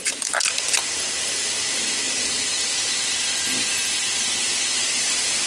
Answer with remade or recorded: recorded